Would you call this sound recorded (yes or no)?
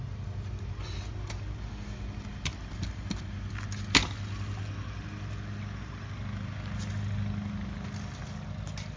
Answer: yes